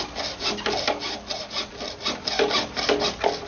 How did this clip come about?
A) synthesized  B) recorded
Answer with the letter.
B